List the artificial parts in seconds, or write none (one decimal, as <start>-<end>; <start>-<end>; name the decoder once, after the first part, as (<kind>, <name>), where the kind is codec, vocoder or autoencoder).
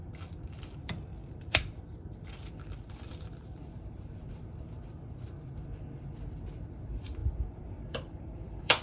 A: 0.0-7.2 (vocoder, BigVGAN v2); 7.9-8.8